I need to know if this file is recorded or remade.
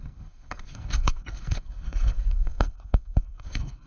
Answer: remade